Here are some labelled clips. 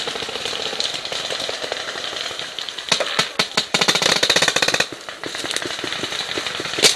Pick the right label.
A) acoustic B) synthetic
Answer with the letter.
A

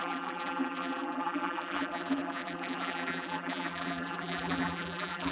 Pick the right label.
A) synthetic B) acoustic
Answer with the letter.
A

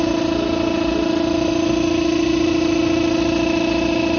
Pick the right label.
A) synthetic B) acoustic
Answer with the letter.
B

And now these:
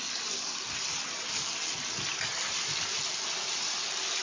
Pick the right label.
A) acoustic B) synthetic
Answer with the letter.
A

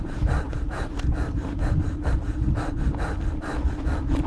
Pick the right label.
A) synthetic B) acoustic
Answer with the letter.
B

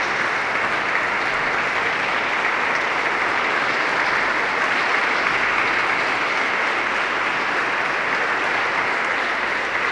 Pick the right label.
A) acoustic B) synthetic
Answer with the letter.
A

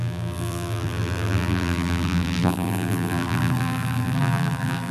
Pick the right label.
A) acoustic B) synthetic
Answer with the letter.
B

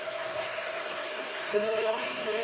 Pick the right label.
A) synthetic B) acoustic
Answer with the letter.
A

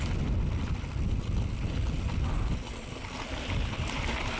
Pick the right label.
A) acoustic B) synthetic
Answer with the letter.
A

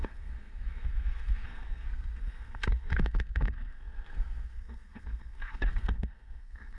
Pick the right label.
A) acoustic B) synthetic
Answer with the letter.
B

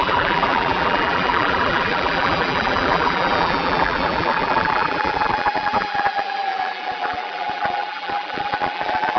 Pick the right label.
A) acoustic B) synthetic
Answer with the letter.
B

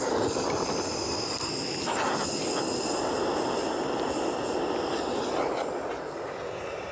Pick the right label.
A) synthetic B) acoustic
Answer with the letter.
B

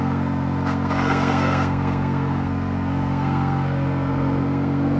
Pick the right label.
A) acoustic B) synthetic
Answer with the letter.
B